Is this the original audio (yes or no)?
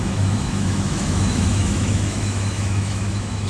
no